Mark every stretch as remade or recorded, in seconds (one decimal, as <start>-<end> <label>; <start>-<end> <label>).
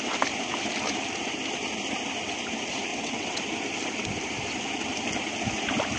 0.0-2.9 recorded; 2.9-3.4 remade; 3.4-6.0 recorded